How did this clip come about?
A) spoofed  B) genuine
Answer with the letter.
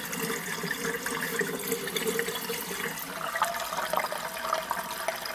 B